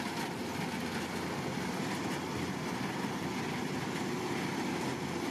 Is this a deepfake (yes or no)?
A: no